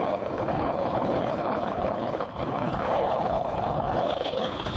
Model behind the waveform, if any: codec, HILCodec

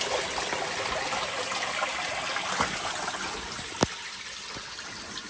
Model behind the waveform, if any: none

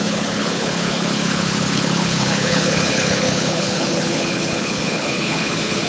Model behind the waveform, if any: codec, HILCodec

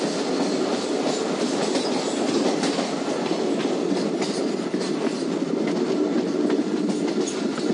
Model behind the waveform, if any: none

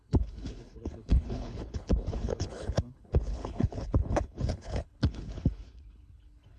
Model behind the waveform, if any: codec, HILCodec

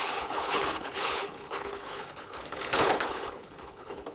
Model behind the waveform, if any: codec, HILCodec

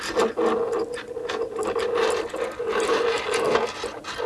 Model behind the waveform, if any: none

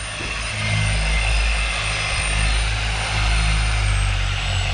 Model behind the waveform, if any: none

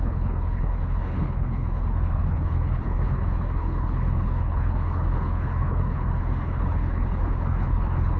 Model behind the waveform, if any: codec, HILCodec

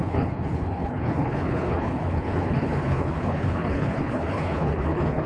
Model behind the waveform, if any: codec, HILCodec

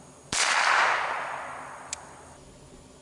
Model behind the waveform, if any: none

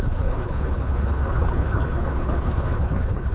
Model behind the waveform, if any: codec, HILCodec